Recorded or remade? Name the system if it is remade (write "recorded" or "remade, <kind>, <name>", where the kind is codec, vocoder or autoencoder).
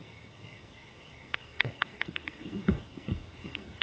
remade, codec, SNAC